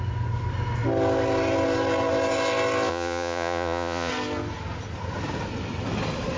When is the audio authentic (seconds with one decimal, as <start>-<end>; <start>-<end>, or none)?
0.0-2.9; 4.1-6.4